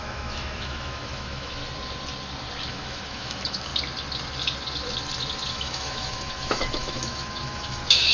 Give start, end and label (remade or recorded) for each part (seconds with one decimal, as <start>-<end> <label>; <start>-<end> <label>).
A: 0.0-1.6 remade; 1.6-2.7 recorded; 2.7-3.7 remade; 3.7-5.5 recorded; 5.5-8.1 remade